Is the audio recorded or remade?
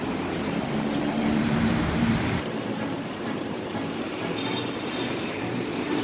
remade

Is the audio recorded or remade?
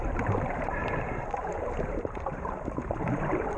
remade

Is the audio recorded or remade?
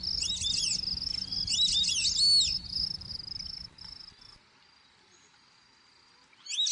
recorded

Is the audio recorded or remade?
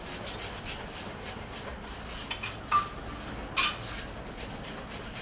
recorded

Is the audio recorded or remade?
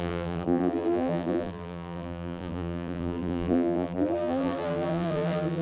remade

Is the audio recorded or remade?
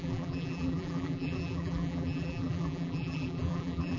remade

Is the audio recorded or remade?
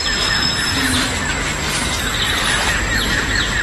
recorded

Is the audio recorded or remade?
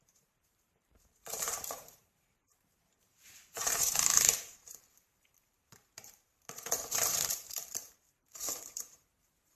remade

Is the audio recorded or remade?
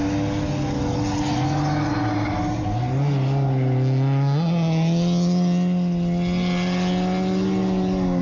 recorded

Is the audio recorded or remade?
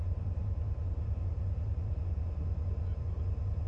remade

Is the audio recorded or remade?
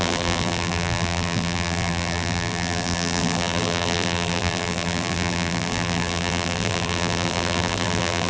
remade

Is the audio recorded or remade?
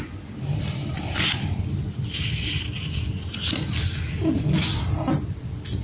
recorded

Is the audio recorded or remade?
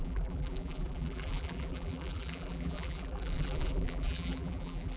remade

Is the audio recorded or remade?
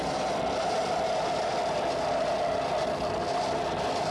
recorded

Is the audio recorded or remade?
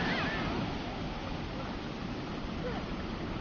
recorded